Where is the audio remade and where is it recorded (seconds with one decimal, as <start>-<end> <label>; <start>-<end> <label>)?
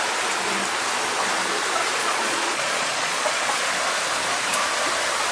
0.0-2.0 recorded; 2.0-3.6 remade; 3.6-5.3 recorded